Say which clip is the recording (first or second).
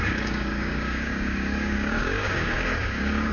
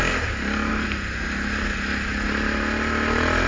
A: second